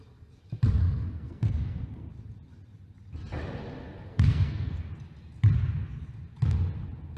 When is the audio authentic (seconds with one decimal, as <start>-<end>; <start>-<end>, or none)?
0.0-0.8; 2.1-4.1; 4.9-7.2